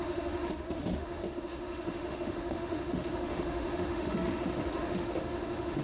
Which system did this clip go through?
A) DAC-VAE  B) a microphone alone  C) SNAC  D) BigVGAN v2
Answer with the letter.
A